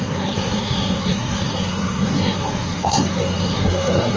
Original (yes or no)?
no